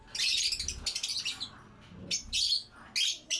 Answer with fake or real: real